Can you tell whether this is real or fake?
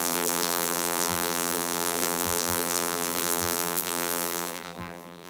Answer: fake